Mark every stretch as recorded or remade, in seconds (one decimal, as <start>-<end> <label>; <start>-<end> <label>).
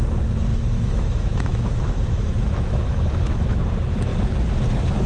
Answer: 0.0-0.5 recorded; 0.5-3.6 remade; 3.6-5.1 recorded